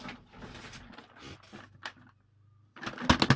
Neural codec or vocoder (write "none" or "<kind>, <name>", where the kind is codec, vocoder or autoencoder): none